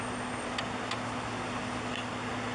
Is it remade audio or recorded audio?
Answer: recorded